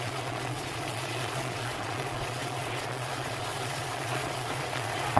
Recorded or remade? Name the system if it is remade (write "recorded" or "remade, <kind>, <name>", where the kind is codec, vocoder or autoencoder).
remade, vocoder, Vocos